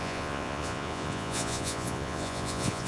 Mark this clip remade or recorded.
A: remade